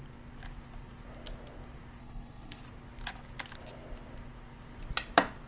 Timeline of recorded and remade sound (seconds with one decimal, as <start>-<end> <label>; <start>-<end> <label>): 0.0-2.0 recorded; 2.0-2.6 remade; 2.6-5.5 recorded